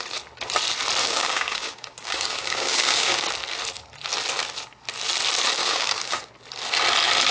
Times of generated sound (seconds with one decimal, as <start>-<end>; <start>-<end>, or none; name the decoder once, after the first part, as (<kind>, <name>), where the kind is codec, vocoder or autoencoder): 1.0-3.3 (codec, DAC); 5.6-6.3